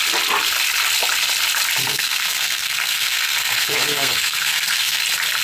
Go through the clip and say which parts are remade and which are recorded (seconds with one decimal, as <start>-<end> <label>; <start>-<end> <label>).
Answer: 0.0-1.8 recorded; 1.8-5.0 remade; 5.0-5.4 recorded